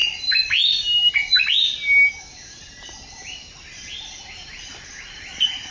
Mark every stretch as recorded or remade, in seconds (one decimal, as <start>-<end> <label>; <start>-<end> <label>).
0.0-5.7 recorded